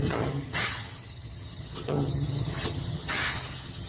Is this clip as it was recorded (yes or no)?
no